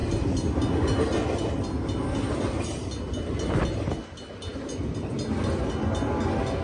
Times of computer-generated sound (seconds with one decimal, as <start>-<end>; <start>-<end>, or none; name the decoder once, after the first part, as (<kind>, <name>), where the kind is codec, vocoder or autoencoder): none